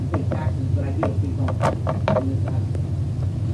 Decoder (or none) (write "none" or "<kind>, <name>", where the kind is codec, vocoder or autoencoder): none